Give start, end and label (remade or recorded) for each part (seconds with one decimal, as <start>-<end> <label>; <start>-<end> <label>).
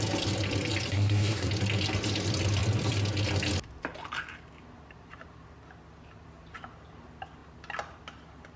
0.0-0.9 recorded; 0.9-1.5 remade; 1.5-8.6 recorded